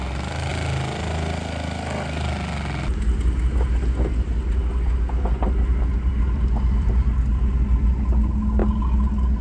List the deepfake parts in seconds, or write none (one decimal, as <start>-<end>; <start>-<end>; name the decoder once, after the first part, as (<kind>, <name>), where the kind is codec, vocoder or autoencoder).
6.1-6.9 (vocoder, BigVGAN v2)